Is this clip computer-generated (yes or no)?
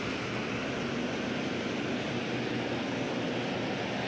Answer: no